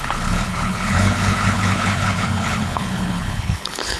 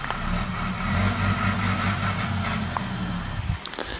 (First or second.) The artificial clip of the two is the first